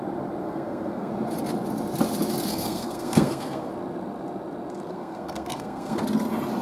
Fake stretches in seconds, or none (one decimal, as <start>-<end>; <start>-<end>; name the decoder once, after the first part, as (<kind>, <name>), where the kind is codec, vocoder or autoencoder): 0.4-1.1 (codec, SNAC); 2.5-3.7; 4.9-6.0